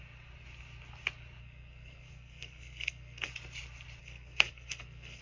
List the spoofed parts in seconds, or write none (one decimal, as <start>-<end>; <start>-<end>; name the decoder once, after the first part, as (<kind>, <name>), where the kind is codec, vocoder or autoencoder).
1.4-3.3 (codec, SNAC); 4.0-5.2